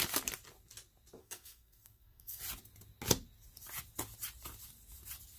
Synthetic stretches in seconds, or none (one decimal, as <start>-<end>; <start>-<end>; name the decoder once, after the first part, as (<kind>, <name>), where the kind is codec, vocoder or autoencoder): 1.2-2.4 (codec, SNAC)